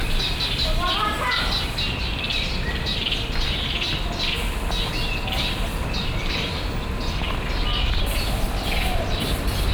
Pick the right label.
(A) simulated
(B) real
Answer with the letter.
B